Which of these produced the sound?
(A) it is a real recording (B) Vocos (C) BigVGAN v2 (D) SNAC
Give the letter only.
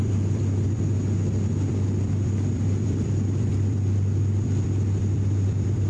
C